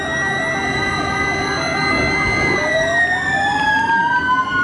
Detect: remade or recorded recorded